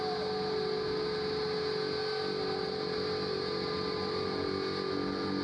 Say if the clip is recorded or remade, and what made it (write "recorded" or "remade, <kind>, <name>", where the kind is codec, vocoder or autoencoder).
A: recorded